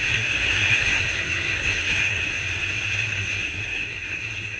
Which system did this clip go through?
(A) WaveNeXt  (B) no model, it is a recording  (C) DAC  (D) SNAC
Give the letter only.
D